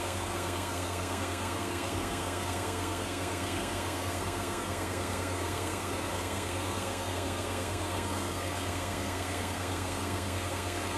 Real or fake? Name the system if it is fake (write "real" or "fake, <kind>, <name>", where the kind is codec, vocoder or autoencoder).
fake, codec, SNAC